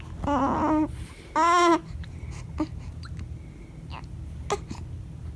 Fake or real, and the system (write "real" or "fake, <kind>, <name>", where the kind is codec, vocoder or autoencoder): real